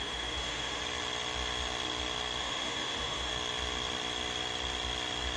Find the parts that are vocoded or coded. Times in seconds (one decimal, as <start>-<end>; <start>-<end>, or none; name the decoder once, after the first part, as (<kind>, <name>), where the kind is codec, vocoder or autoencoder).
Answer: 0.0-0.8 (autoencoder, DAC-VAE); 2.4-3.3